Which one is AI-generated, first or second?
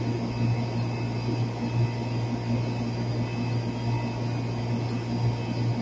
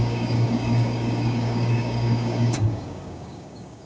second